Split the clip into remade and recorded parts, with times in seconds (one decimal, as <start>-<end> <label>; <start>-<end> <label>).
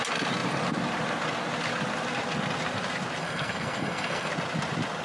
0.0-3.2 recorded; 3.2-4.3 remade; 4.3-5.0 recorded